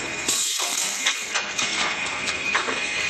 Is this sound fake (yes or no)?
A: yes